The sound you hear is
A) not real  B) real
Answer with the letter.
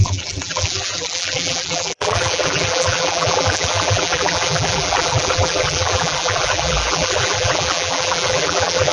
A